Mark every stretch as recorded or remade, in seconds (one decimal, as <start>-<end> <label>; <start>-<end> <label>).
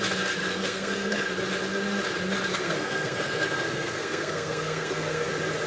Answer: 0.0-0.4 recorded; 0.4-1.3 remade; 1.3-2.5 recorded; 2.5-5.3 remade; 5.3-5.7 recorded